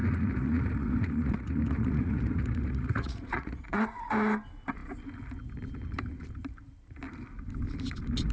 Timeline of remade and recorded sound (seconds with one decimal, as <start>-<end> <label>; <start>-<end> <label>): 0.0-3.9 remade; 3.9-8.3 recorded